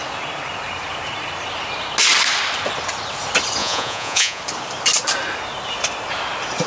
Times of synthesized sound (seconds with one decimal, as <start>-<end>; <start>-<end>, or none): 3.6-4.4